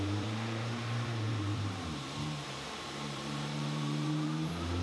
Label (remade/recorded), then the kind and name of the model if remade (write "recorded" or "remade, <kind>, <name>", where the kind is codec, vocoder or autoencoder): remade, vocoder, BigVGAN v2